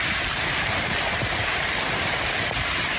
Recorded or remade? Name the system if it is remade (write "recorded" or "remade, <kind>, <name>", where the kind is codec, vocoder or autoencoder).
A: remade, vocoder, BigVGAN v2